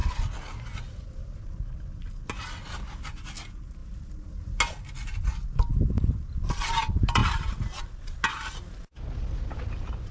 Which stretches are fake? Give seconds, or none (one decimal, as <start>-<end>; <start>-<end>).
none

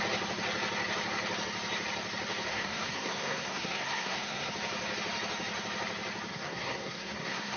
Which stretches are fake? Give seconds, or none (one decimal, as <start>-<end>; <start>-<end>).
2.5-4.5; 6.3-7.6